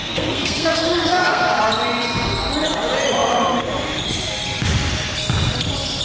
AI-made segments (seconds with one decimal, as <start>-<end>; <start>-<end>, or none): 0.0-1.6